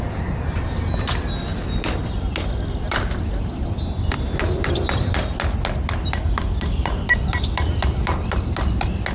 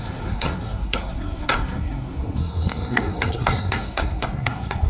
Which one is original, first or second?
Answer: first